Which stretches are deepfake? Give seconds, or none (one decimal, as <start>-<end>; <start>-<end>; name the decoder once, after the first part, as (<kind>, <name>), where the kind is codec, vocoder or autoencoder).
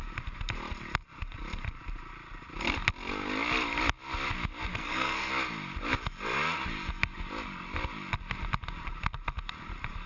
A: 4.7-5.3 (codec, SNAC)